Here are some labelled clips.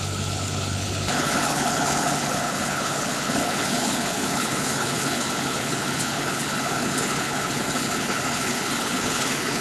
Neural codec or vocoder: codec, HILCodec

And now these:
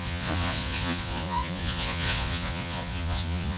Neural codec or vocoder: vocoder, Vocos